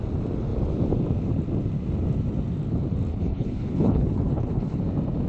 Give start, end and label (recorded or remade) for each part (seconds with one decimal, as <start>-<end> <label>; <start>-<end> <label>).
0.0-3.1 recorded; 3.1-4.8 remade; 4.8-5.3 recorded